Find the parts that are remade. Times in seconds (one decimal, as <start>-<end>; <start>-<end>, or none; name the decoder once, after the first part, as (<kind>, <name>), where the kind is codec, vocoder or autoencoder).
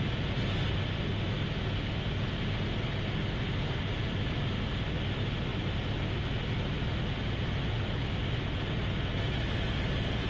none